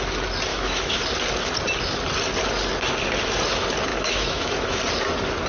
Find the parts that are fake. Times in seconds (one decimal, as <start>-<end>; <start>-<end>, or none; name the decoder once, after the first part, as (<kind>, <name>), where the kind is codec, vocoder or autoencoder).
0.5-1.0 (autoencoder, DAC-VAE); 3.9-4.8